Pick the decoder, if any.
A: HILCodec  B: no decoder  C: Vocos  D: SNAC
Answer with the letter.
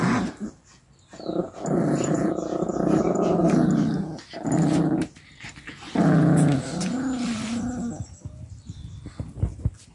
B